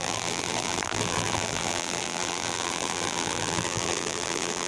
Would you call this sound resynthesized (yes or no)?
yes